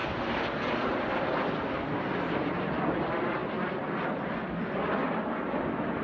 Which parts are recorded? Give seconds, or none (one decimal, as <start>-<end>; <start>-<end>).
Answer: 0.0-6.0